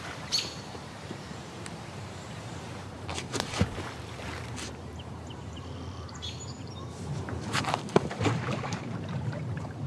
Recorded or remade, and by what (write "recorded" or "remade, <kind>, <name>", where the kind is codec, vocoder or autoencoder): remade, vocoder, BigVGAN v2